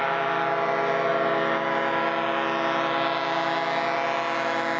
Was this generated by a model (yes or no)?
no